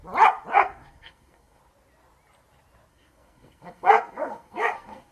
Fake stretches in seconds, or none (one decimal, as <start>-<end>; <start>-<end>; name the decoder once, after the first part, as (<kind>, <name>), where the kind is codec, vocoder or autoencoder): 0.5-1.6 (codec, SNAC); 2.9-5.1